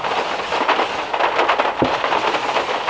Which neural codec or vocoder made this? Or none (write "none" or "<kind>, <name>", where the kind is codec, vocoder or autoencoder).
none